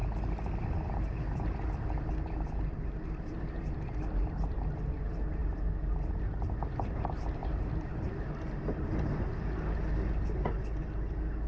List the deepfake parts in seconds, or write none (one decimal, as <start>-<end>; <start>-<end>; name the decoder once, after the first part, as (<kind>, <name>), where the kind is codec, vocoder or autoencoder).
7.4-7.9 (vocoder, BigVGAN v2)

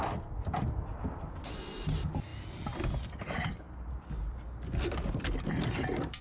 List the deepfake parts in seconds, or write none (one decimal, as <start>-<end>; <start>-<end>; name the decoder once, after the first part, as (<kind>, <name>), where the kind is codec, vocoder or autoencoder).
none